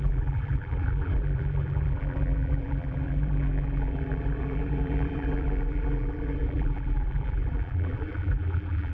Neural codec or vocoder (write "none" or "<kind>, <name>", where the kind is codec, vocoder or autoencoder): vocoder, BigVGAN v2